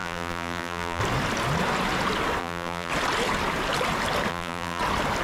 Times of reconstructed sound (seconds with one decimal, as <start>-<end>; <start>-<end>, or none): 0.0-1.0; 2.4-2.9; 4.3-4.8